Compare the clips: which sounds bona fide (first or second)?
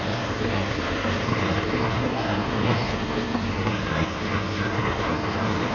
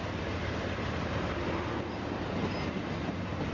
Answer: second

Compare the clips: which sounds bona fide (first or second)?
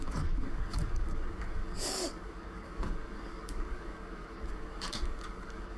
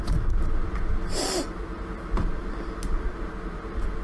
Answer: second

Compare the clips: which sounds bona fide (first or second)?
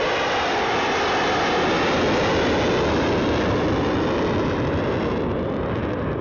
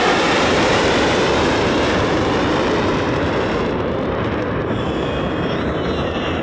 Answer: first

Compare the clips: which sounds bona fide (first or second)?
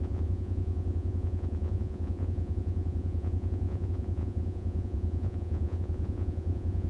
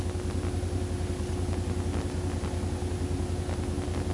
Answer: second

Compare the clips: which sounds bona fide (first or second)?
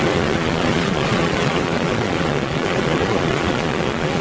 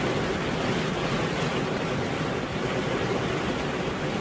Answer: second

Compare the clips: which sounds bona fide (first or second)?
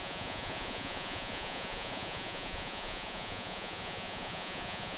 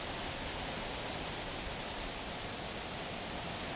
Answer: second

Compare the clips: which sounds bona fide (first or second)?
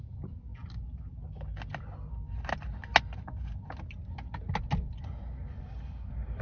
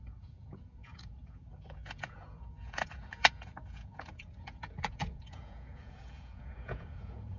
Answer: first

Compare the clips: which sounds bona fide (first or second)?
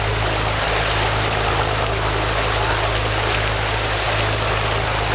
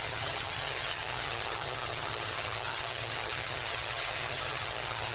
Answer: first